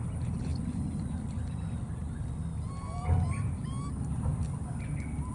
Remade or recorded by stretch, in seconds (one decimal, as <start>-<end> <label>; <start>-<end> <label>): 0.0-0.5 recorded; 0.5-3.7 remade; 3.7-5.3 recorded